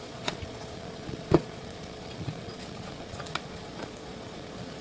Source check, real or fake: fake